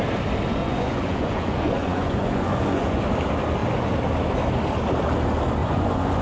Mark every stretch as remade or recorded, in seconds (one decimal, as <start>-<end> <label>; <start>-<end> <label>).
0.0-0.6 recorded; 0.6-3.0 remade; 3.0-5.6 recorded; 5.6-6.2 remade